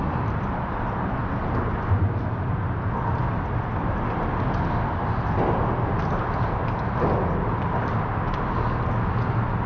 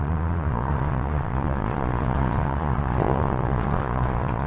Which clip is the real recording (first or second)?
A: first